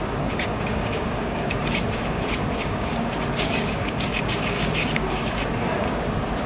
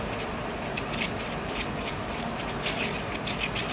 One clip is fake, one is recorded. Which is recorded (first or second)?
second